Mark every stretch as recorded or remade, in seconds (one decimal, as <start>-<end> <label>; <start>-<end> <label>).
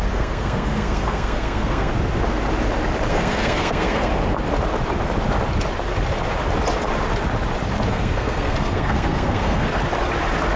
0.0-1.9 remade; 1.9-3.1 recorded; 3.1-4.1 remade; 4.1-7.9 recorded; 7.9-9.7 remade; 9.7-10.6 recorded